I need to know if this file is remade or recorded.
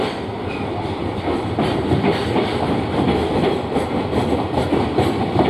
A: recorded